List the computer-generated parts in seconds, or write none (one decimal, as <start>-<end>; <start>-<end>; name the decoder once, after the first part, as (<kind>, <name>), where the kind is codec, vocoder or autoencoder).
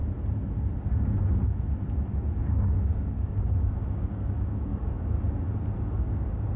2.7-4.7 (codec, DAC); 6.0-6.6